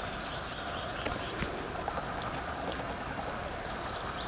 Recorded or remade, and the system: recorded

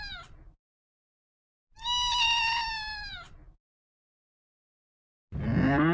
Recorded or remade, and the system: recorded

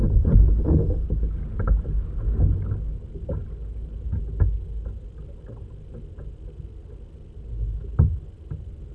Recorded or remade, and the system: recorded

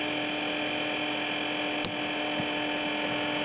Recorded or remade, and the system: recorded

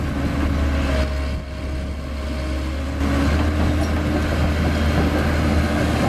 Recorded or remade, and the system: recorded